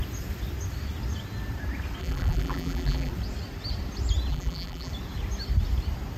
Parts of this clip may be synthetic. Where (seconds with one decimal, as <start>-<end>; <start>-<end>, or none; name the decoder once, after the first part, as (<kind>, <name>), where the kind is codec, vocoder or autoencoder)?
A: 2.0-3.1 (vocoder, BigVGAN v2); 4.3-4.9